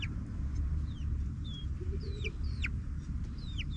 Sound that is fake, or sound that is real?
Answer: fake